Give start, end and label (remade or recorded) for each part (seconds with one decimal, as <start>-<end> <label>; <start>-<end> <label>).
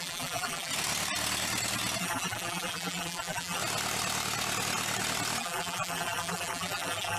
0.0-0.7 remade; 0.7-2.0 recorded; 2.0-3.6 remade; 3.6-5.4 recorded; 5.4-7.2 remade